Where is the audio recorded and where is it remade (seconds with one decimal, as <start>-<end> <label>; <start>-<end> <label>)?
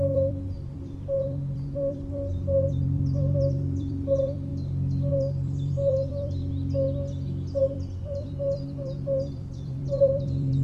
0.0-4.5 remade; 4.5-5.1 recorded; 5.1-6.4 remade; 6.4-7.7 recorded; 7.7-10.6 remade